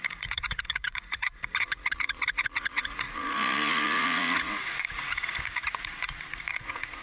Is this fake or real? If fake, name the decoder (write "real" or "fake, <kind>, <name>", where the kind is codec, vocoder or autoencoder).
fake, vocoder, Vocos